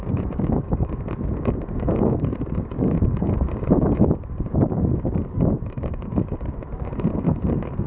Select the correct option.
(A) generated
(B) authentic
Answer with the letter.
A